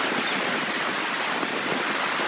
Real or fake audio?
real